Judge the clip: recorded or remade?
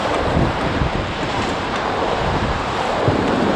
remade